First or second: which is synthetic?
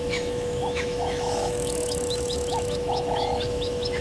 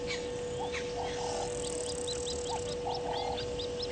first